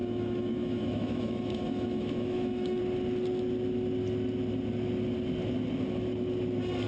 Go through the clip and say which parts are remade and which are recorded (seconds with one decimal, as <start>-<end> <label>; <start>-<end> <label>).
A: 0.0-2.8 remade; 2.8-6.9 recorded

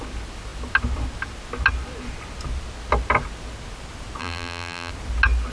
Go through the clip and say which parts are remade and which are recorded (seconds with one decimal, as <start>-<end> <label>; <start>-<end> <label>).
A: 0.0-4.2 recorded; 4.2-4.9 remade; 4.9-5.5 recorded

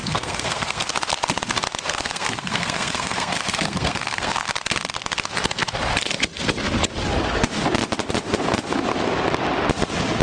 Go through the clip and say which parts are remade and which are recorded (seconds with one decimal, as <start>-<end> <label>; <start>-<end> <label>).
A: 0.0-0.9 remade; 0.9-1.9 recorded; 1.9-4.5 remade; 4.5-10.2 recorded

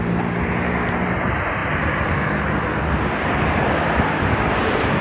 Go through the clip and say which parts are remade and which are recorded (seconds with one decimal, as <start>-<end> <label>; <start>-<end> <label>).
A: 0.0-5.0 recorded

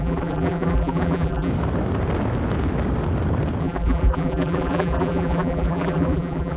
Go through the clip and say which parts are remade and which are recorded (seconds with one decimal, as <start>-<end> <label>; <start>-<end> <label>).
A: 0.0-1.5 remade; 1.5-3.6 recorded; 3.6-6.6 remade

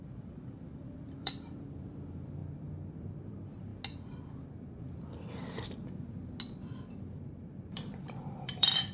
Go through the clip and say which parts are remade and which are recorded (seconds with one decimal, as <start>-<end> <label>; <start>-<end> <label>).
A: 0.0-2.4 remade; 2.4-3.0 recorded; 3.0-3.7 remade; 3.7-7.1 recorded; 7.1-8.9 remade

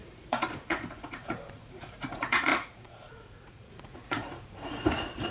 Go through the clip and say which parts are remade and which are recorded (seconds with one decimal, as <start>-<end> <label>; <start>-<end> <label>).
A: 0.0-5.3 remade

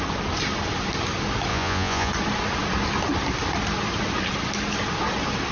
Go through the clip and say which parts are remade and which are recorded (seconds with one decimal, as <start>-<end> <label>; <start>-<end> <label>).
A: 0.0-1.5 recorded; 1.5-2.1 remade; 2.1-5.5 recorded